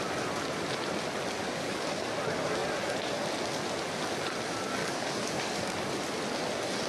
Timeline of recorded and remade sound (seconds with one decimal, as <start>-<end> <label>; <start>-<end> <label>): 0.0-1.4 recorded; 1.4-2.2 remade; 2.2-4.8 recorded; 4.8-5.9 remade; 5.9-6.9 recorded